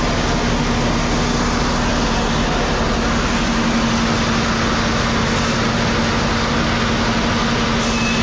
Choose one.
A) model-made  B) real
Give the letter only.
B